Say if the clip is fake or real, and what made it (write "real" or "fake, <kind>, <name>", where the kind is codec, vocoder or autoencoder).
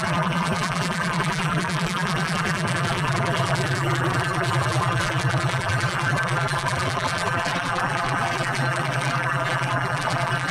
fake, vocoder, BigVGAN v2